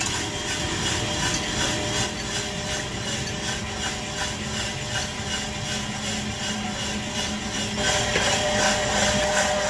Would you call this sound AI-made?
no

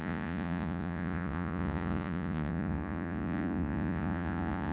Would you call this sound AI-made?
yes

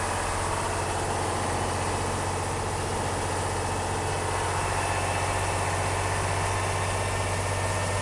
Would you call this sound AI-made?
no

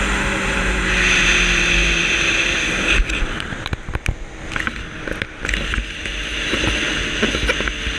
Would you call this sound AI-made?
no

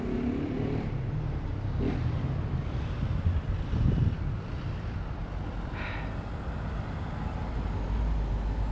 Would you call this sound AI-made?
no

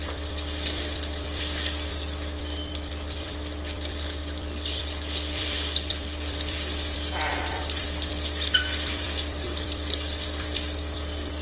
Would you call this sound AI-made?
yes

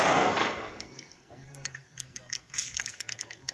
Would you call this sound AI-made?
yes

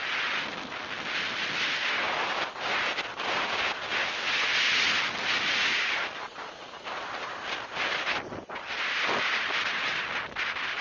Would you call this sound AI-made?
no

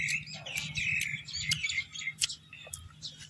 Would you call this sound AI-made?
no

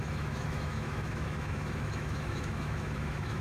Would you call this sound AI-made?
yes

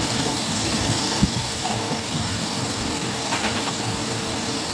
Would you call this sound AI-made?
yes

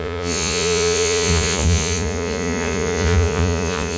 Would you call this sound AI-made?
yes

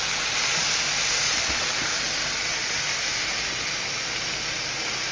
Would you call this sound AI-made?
no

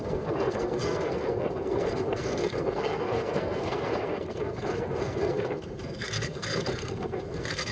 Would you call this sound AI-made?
yes